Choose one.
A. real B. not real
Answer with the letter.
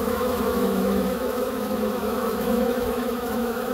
B